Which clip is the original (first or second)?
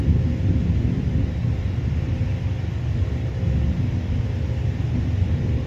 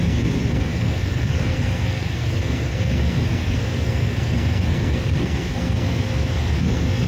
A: first